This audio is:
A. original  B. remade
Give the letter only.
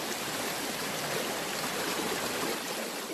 A